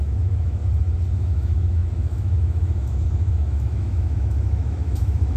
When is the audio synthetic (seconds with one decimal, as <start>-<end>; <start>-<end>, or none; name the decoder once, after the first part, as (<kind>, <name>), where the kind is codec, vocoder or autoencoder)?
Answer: 0.0-0.6 (autoencoder, DAC-VAE); 1.1-5.4

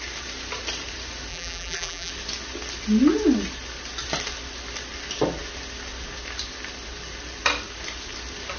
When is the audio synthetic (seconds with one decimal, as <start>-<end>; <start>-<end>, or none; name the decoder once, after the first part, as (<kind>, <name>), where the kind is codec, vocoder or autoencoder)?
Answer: 1.3-2.1 (vocoder, BigVGAN v2)

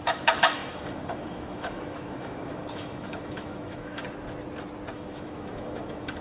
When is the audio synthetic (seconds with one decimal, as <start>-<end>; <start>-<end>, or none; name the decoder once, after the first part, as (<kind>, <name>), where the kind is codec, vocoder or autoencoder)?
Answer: 0.0-4.0 (autoencoder, DAC-VAE); 4.9-6.2

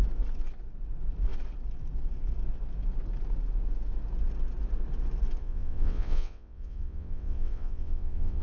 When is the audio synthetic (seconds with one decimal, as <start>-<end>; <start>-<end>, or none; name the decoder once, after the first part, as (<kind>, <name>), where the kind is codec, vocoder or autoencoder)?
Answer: 5.4-8.4 (vocoder, WaveNeXt)

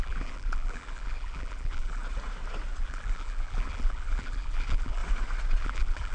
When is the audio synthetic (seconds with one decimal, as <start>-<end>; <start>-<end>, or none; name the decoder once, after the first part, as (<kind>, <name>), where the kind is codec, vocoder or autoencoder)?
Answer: 0.0-2.0 (vocoder, BigVGAN v2); 2.8-5.0; 5.6-6.1

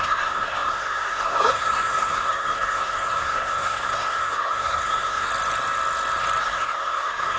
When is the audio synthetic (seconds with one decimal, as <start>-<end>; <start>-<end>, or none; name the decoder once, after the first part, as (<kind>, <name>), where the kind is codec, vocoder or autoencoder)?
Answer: 0.0-5.3 (codec, SNAC); 6.4-7.4